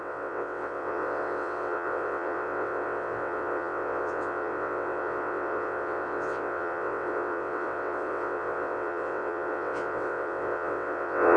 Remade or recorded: remade